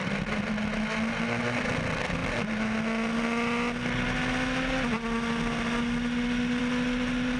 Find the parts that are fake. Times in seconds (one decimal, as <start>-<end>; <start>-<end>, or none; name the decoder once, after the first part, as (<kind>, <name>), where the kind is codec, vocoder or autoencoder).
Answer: none